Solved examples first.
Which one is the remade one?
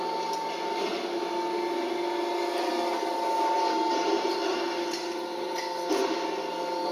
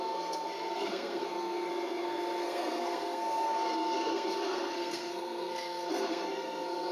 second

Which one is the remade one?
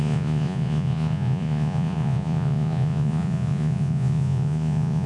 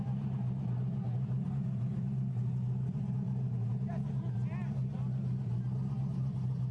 first